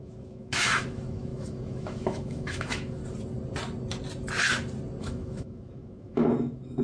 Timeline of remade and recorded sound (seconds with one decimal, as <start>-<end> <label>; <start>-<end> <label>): 0.0-3.0 remade; 3.0-5.0 recorded; 5.0-6.8 remade